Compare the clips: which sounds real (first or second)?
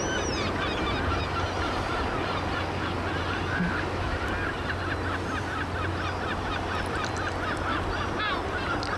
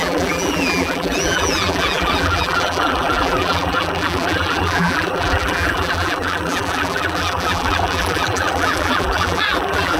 first